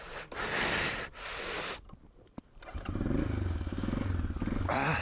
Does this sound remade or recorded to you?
recorded